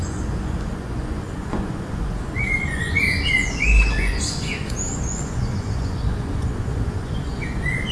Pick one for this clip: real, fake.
fake